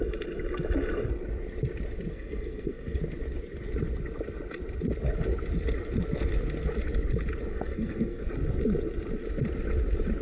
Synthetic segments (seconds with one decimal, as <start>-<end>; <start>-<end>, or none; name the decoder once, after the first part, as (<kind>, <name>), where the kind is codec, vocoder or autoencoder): 2.1-3.0 (codec, SNAC); 7.5-8.3